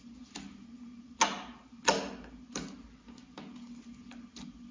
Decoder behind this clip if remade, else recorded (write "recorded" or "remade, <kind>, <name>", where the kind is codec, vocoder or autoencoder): recorded